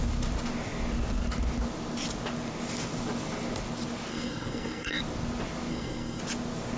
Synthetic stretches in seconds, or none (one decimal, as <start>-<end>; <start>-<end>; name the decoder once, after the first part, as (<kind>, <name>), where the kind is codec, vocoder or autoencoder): 4.1-5.0 (codec, SNAC); 5.7-6.2